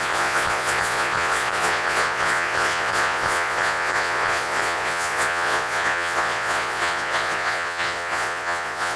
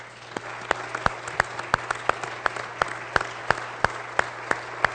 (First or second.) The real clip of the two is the second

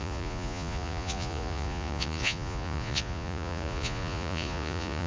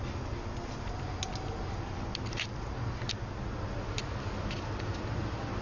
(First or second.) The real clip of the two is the second